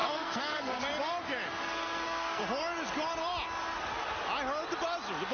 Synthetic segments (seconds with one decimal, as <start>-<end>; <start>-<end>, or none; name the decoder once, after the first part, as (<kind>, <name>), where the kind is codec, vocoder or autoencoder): 0.0-0.8 (codec, SNAC); 1.6-2.4